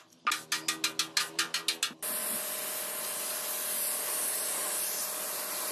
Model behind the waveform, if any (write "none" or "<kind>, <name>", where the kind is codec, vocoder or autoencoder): none